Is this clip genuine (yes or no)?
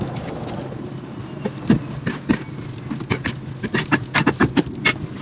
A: yes